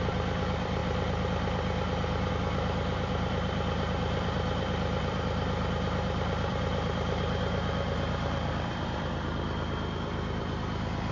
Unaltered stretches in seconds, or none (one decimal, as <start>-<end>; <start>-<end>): none